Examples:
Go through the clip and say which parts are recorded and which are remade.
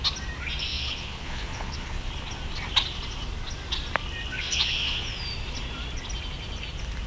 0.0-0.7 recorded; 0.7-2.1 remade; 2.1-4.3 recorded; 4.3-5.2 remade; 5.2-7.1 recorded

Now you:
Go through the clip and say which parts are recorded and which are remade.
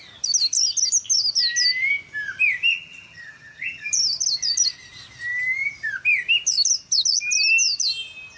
0.0-2.7 recorded; 2.7-3.9 remade; 3.9-8.4 recorded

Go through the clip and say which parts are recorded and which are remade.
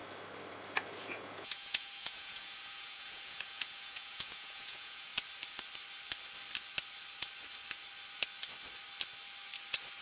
0.0-1.0 recorded; 1.0-5.1 remade; 5.1-10.0 recorded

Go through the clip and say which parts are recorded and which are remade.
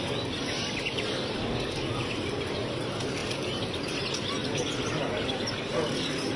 0.0-6.4 recorded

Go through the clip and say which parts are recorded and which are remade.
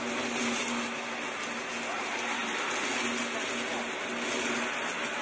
0.0-2.4 recorded; 2.4-3.0 remade; 3.0-5.2 recorded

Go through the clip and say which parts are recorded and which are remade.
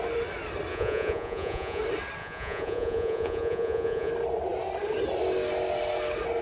0.0-0.7 recorded; 0.7-1.8 remade; 1.8-2.2 recorded; 2.2-4.1 remade; 4.1-6.4 recorded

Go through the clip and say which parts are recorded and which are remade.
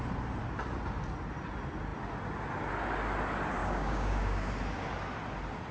0.0-3.6 recorded; 3.6-4.5 remade; 4.5-5.7 recorded